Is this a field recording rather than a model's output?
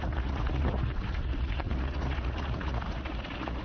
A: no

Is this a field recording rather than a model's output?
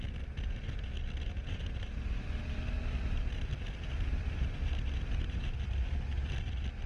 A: yes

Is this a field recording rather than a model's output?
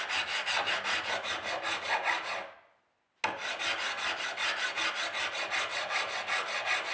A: yes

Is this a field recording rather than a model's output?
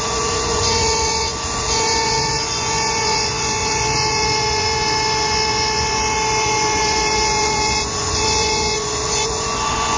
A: no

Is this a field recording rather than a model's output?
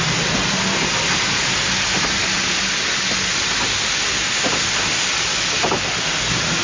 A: yes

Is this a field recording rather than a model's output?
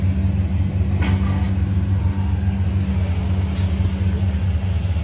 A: yes